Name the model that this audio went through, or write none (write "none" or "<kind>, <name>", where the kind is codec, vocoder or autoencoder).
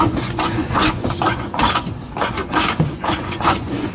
vocoder, Vocos